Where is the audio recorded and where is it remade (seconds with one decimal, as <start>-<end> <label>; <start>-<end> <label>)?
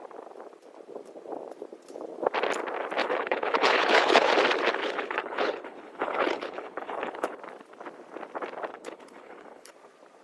0.0-3.0 recorded; 3.0-4.3 remade; 4.3-4.8 recorded; 4.8-7.4 remade; 7.4-8.7 recorded; 8.7-9.7 remade; 9.7-10.2 recorded